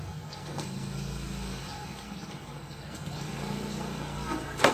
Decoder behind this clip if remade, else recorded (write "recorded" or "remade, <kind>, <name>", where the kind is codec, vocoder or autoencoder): remade, codec, SNAC